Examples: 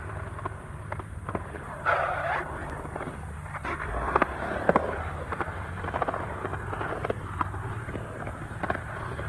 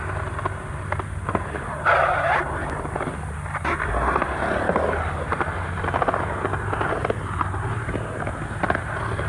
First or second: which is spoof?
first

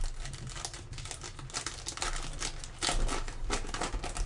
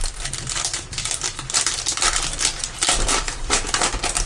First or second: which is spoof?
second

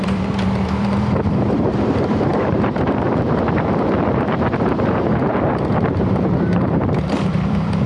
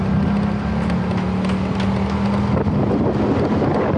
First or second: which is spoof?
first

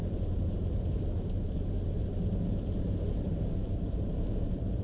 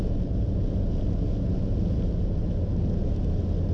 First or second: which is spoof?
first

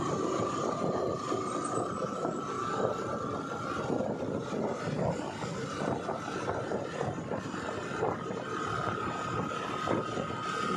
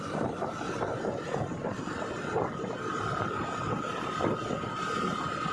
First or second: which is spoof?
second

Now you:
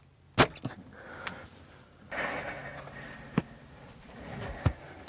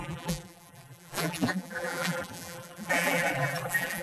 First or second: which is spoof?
second